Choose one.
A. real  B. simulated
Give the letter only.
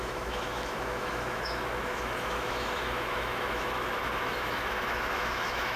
B